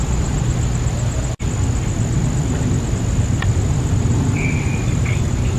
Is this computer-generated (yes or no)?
no